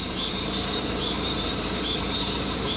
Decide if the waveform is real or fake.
fake